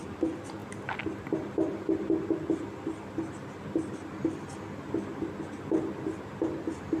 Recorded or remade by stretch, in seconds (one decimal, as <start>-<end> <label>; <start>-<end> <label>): 0.0-7.0 recorded